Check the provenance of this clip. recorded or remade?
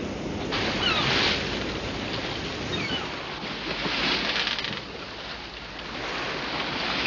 recorded